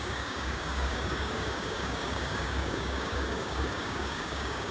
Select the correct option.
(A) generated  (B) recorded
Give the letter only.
A